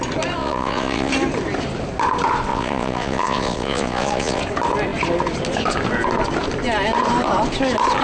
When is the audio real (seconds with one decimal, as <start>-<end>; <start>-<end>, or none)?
0.0-0.4; 1.1-2.5; 4.4-8.0